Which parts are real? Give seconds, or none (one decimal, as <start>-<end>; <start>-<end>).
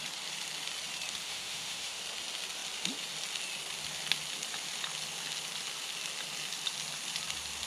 0.0-1.2; 2.0-7.7